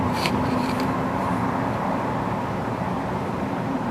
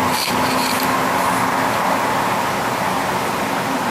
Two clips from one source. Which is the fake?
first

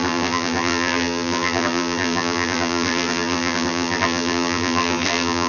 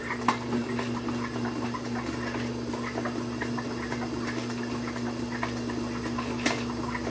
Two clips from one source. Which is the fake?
first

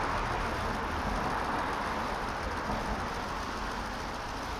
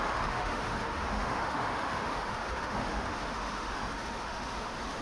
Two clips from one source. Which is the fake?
second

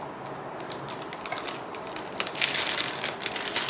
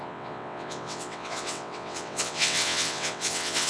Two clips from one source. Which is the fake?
second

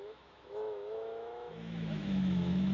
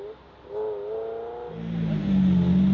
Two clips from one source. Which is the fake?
first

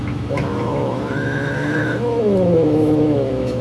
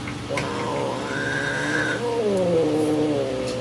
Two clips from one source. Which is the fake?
first